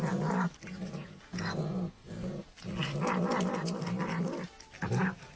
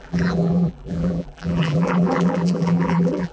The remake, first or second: second